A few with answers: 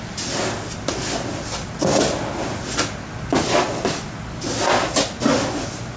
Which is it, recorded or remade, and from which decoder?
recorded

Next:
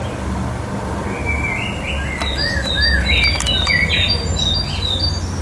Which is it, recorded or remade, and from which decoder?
recorded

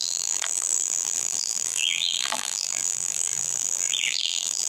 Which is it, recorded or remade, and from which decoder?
remade, vocoder, BigVGAN v2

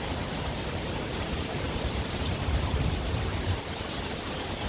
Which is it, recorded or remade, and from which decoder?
remade, vocoder, BigVGAN v2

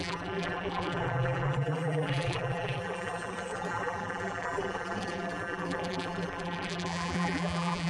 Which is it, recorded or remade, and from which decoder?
remade, vocoder, BigVGAN v2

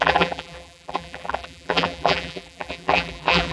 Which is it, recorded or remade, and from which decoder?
remade, vocoder, BigVGAN v2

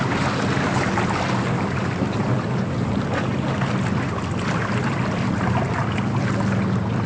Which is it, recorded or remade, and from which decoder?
recorded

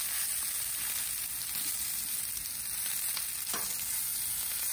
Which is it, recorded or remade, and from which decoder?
recorded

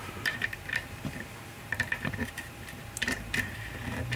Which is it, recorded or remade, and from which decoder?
remade, vocoder, BigVGAN v2